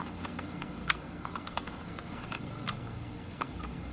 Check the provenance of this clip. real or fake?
fake